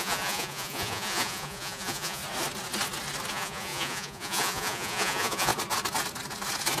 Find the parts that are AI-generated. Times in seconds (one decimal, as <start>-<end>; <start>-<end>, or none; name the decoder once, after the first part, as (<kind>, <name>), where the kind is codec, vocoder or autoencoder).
0.0-2.2 (vocoder, Vocos); 3.3-5.5